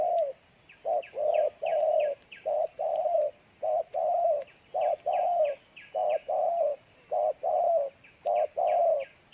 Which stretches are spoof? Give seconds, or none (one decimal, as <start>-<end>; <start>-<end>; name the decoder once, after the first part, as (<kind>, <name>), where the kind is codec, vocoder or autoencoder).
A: 1.7-3.0 (vocoder, BigVGAN v2); 4.1-5.1; 6.0-7.7